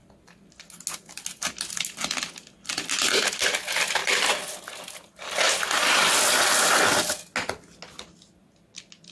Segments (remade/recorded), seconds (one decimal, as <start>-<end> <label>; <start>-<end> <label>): 0.0-4.0 recorded; 4.0-5.6 remade; 5.6-9.1 recorded